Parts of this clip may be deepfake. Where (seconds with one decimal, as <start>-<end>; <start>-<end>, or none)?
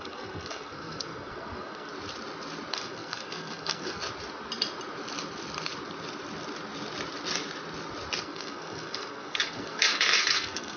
0.0-1.9; 2.7-4.0; 8.2-10.8